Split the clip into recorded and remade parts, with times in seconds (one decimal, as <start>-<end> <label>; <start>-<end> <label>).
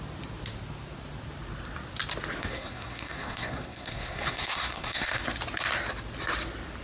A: 0.0-2.4 recorded; 2.4-5.2 remade; 5.2-6.8 recorded